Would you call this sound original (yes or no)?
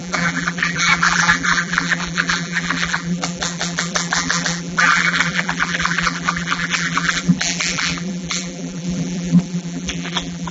no